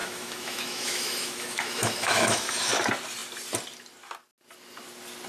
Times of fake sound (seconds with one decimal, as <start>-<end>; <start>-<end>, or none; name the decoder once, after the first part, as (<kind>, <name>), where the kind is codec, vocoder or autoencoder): 0.0-2.7 (autoencoder, DAC-VAE)